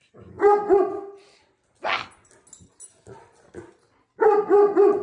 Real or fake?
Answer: real